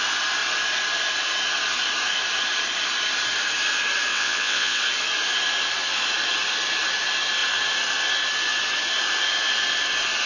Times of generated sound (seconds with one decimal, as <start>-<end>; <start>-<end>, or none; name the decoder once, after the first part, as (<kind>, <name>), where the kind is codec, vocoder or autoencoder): 4.1-4.8 (vocoder, WaveNeXt)